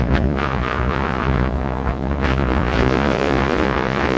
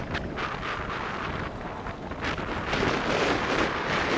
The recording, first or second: second